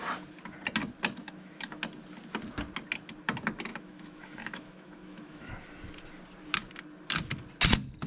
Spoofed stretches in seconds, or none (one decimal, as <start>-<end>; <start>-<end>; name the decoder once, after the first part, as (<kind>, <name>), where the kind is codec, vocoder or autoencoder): 1.2-1.8 (autoencoder, DAC-VAE); 3.7-5.5